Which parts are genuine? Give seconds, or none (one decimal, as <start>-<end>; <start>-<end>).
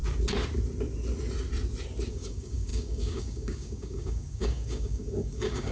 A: 0.0-2.1